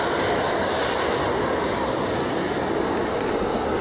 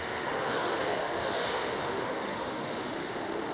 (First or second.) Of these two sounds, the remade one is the second